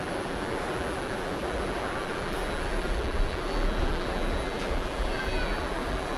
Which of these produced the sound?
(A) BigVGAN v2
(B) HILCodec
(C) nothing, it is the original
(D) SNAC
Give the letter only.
A